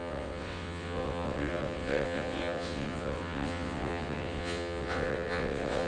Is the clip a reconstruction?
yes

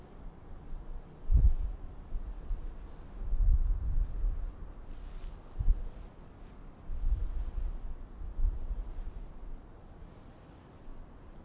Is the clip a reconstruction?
no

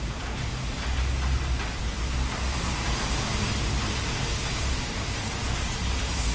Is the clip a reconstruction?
no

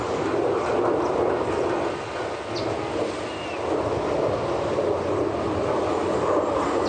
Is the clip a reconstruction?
no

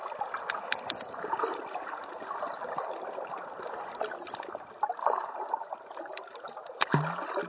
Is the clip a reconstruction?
no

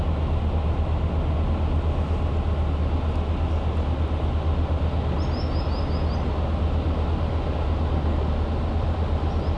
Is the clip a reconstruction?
no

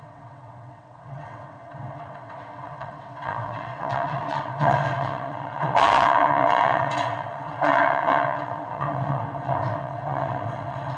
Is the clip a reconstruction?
yes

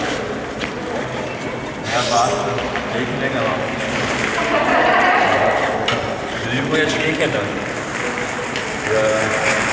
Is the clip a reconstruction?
no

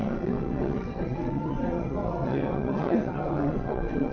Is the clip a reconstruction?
yes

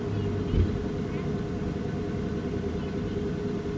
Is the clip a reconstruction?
no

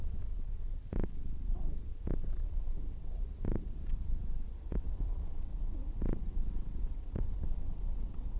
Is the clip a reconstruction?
yes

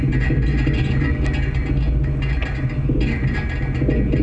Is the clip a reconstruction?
no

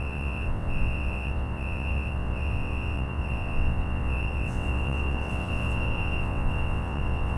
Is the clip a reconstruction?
yes